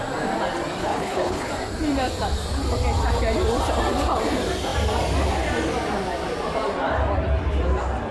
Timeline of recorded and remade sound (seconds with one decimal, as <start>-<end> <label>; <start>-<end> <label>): 0.0-0.8 recorded; 0.8-1.5 remade; 1.5-8.1 recorded